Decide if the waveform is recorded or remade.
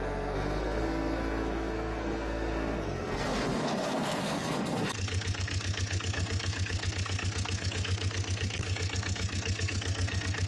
remade